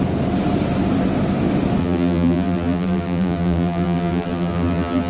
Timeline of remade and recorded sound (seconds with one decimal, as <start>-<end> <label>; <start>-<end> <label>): 0.0-1.8 recorded; 1.8-5.1 remade